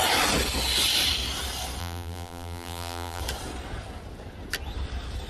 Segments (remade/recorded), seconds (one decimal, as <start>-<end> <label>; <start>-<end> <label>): 0.0-1.8 recorded; 1.8-3.2 remade; 3.2-5.3 recorded